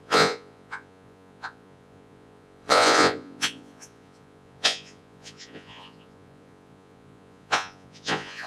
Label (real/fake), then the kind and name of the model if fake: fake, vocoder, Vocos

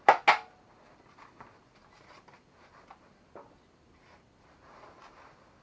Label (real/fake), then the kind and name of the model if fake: real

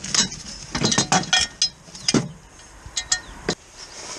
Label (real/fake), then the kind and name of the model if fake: real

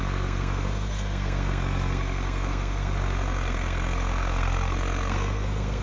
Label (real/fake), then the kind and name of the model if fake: fake, codec, SNAC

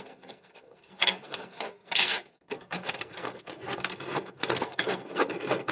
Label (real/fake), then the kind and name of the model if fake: fake, codec, SNAC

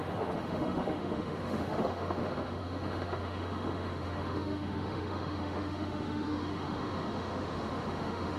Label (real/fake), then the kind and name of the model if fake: fake, autoencoder, DAC-VAE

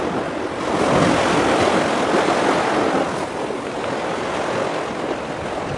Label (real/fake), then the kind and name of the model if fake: real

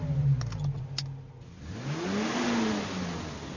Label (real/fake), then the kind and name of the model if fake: real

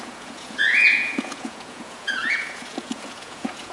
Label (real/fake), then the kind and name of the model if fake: fake, vocoder, Vocos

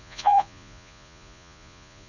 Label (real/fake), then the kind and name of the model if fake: fake, vocoder, Vocos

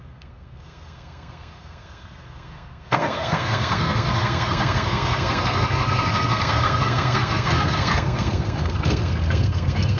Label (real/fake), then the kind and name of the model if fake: fake, codec, SNAC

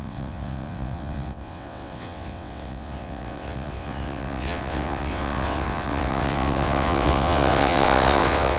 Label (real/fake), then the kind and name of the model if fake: fake, vocoder, WaveNeXt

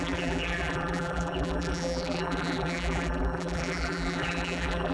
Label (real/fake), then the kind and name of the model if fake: fake, vocoder, BigVGAN v2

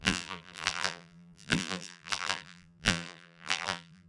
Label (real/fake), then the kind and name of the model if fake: fake, vocoder, BigVGAN v2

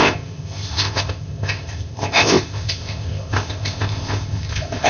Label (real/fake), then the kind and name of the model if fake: fake, codec, ZipCodec